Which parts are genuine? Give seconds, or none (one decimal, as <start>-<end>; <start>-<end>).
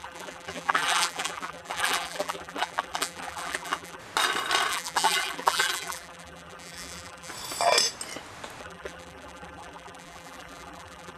4.0-4.7; 7.3-8.6